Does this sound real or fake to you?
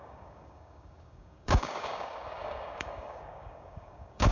fake